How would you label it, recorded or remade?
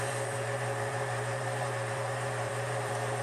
remade